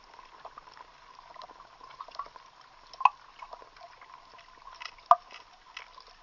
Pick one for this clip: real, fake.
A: real